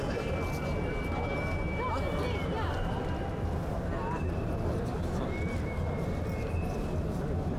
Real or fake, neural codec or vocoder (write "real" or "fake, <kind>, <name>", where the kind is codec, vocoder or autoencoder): real